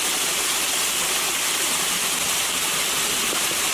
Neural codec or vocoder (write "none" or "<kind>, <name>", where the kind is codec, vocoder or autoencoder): none